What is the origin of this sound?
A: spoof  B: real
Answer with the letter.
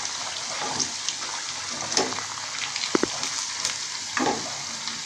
B